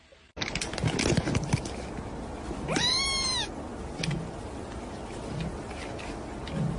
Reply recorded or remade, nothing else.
recorded